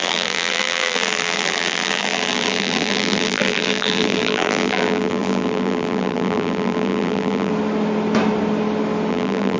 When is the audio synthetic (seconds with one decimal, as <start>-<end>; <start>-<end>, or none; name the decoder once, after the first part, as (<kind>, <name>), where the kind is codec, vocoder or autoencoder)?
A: 0.0-7.5 (vocoder, BigVGAN v2); 9.1-9.6